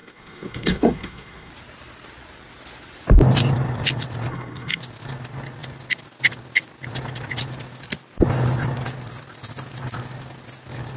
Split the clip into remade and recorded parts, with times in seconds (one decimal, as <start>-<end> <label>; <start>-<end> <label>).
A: 0.0-1.5 remade; 1.5-4.3 recorded; 4.3-4.8 remade; 4.8-11.0 recorded